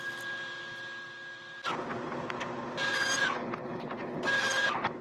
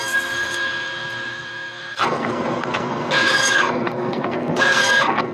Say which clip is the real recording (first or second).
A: first